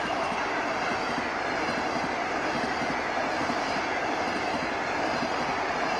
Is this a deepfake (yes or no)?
no